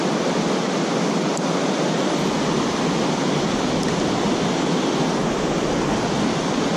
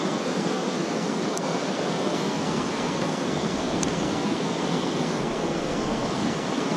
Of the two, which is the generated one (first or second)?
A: second